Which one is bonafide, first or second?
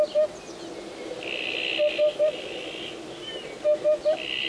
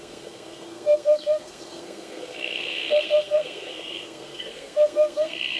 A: first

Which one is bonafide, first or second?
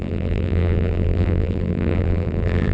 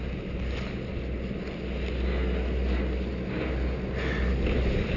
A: second